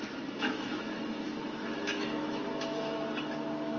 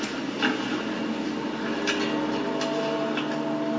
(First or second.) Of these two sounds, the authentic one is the second